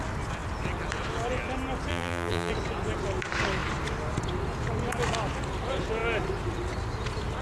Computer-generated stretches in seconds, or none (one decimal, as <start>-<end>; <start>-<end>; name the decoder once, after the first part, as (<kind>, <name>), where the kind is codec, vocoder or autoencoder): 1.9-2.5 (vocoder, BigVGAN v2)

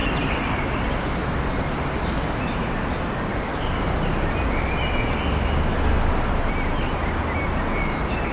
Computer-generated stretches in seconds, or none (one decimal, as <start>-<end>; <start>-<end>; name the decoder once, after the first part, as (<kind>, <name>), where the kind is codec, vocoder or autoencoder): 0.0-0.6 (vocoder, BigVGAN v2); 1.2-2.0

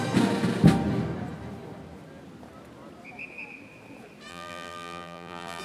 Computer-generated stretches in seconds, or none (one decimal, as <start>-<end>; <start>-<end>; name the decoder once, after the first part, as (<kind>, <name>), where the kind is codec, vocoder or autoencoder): 4.3-5.6 (vocoder, BigVGAN v2)

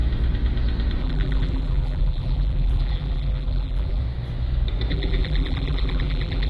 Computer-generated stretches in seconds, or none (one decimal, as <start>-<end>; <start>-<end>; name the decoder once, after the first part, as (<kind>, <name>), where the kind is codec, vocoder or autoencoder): 1.0-4.0 (vocoder, BigVGAN v2); 4.9-6.5

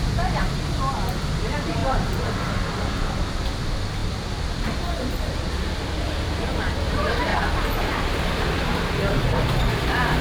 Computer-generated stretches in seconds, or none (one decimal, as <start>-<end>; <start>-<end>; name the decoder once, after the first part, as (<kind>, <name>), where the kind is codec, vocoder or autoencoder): 0.0-10.2 (vocoder, BigVGAN v2)

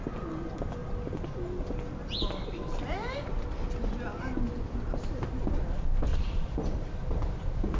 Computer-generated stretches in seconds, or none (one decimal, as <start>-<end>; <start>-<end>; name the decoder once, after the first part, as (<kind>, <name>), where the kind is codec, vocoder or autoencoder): 6.1-6.6 (vocoder, BigVGAN v2)

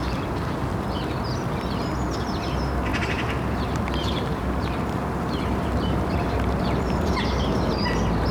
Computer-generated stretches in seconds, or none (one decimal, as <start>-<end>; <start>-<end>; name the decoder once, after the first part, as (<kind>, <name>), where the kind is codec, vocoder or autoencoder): 2.9-7.7 (vocoder, BigVGAN v2)